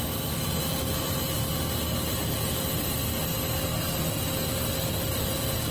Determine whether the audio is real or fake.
real